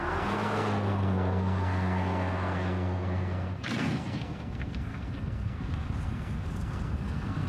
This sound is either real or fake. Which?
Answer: fake